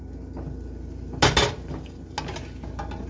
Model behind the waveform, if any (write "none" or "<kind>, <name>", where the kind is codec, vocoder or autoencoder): none